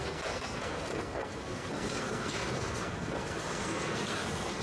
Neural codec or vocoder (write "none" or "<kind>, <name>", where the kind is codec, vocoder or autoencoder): codec, SNAC